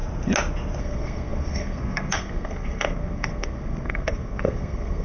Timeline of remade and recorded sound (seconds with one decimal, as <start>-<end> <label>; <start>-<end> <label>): 0.0-0.8 recorded; 0.8-5.0 remade